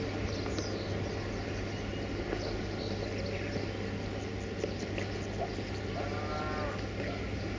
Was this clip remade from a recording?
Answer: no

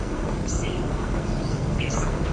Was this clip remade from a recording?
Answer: yes